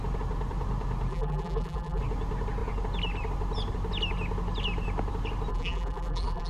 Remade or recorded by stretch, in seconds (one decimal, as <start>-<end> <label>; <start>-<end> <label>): 0.0-1.1 recorded; 1.1-2.0 remade; 2.0-5.5 recorded; 5.5-6.5 remade